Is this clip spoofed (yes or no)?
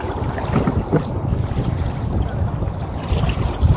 no